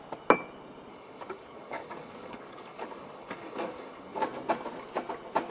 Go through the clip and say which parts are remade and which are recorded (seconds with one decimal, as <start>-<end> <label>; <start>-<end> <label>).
0.0-0.9 recorded; 0.9-4.2 remade; 4.2-5.5 recorded

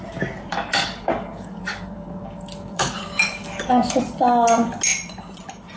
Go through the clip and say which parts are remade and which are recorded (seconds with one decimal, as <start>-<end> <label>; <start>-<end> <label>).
0.0-0.5 recorded; 0.5-4.0 remade; 4.0-5.8 recorded

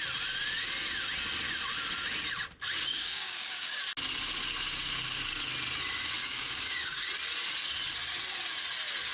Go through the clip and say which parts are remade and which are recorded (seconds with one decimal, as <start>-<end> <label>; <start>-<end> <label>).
0.0-2.9 recorded; 2.9-3.8 remade; 3.8-6.2 recorded; 6.2-7.1 remade; 7.1-9.1 recorded

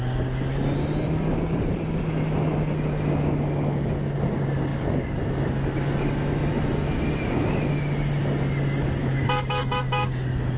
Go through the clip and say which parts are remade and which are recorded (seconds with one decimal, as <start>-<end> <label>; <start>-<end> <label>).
0.0-9.0 recorded; 9.0-10.6 remade

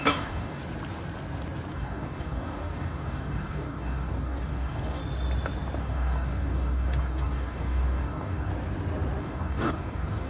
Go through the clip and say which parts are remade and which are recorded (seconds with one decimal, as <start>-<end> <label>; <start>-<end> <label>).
0.0-0.6 remade; 0.6-1.7 recorded; 1.7-5.0 remade; 5.0-5.8 recorded; 5.8-8.5 remade; 8.5-9.2 recorded; 9.2-10.3 remade

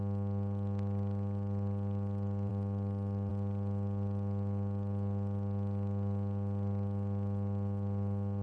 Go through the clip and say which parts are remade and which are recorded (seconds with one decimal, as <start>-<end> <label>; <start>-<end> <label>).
0.0-8.4 recorded